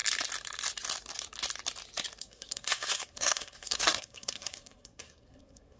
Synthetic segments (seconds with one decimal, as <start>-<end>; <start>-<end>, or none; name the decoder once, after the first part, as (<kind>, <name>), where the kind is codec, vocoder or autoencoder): 2.2-5.8 (codec, SNAC)